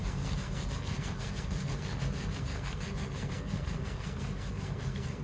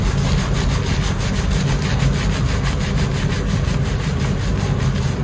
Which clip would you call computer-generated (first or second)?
first